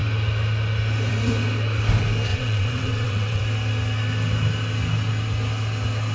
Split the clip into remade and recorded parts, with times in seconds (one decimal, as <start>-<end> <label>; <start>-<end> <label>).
0.0-2.3 recorded; 2.3-3.4 remade; 3.4-6.1 recorded